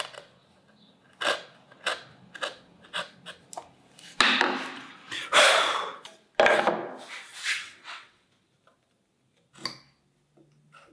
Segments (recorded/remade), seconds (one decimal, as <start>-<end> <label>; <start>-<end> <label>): 0.0-7.3 recorded; 7.3-8.3 remade; 8.3-10.9 recorded